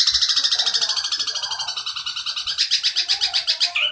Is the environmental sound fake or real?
real